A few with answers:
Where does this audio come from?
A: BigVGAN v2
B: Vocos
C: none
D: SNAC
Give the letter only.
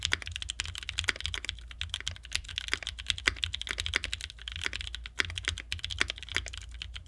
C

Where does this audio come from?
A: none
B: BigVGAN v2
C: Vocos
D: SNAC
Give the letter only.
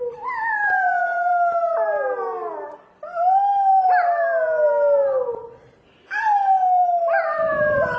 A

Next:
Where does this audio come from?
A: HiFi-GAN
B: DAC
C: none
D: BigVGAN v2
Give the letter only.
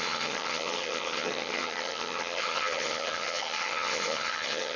A